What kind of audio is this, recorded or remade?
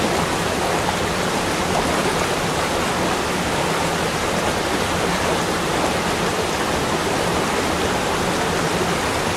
recorded